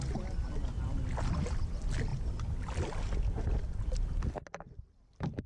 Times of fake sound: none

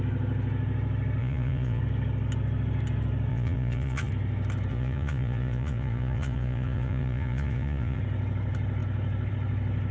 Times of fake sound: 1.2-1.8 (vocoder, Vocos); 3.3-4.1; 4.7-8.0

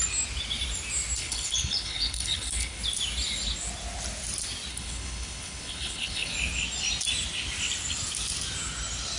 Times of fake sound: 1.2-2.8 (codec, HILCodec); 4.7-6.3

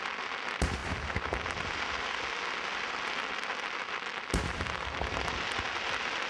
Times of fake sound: none